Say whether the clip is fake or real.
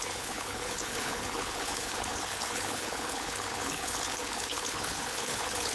fake